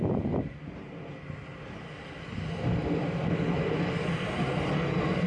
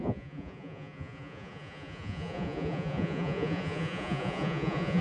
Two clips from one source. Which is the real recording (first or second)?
first